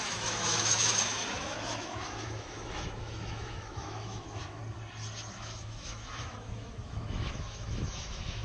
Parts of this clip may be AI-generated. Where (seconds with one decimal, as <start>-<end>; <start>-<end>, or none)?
0.0-4.6; 5.3-8.4